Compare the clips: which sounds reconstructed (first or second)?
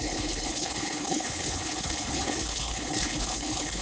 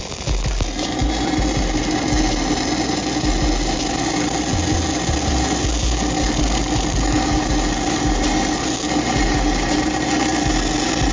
first